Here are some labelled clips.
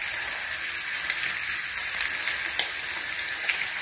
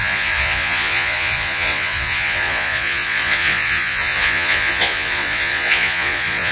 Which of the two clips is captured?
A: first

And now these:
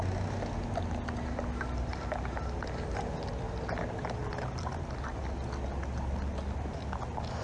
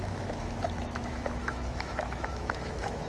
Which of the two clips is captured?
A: first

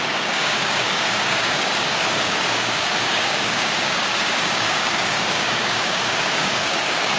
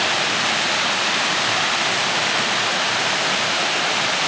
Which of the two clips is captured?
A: second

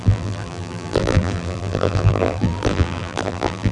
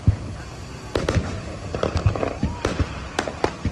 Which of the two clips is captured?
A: second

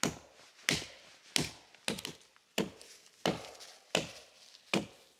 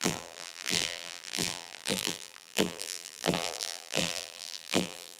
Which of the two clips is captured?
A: first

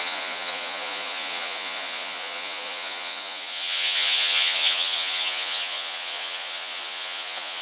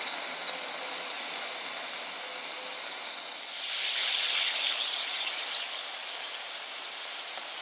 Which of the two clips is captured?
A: second